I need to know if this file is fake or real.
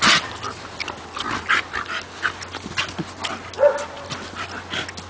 real